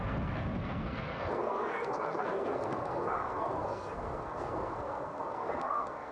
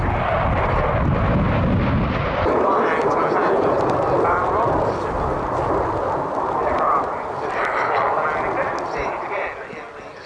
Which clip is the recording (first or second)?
second